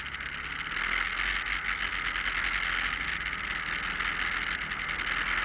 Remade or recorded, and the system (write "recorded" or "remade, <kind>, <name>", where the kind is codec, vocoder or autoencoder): recorded